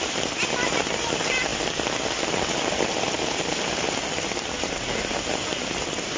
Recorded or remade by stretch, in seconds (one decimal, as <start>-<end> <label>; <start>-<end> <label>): 0.0-6.2 recorded